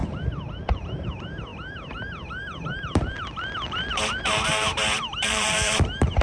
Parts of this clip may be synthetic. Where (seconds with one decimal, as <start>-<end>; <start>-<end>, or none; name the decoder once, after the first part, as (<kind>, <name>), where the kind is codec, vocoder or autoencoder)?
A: 0.0-6.2 (vocoder, BigVGAN v2)